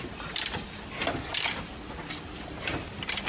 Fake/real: real